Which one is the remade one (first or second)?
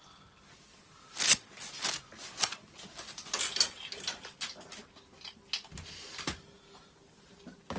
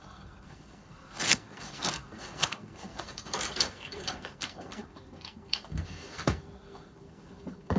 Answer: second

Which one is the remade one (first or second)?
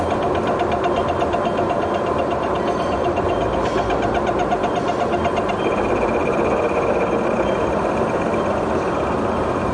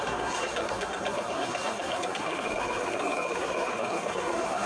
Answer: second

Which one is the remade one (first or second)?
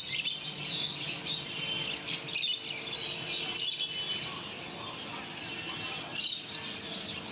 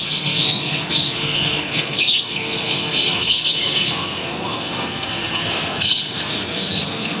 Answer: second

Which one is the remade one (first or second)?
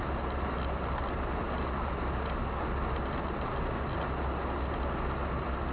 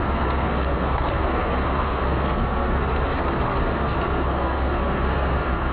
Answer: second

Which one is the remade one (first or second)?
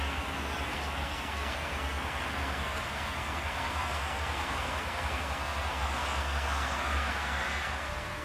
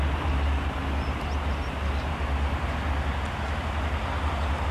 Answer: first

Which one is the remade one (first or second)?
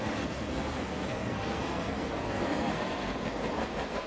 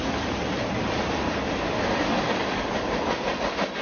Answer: first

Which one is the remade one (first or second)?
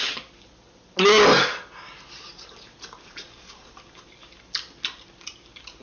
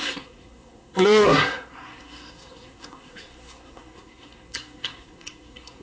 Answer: second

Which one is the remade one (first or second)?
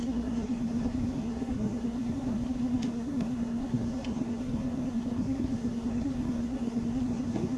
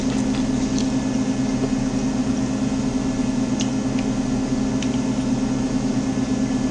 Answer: first